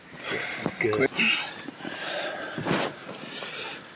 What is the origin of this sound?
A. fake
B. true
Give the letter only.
B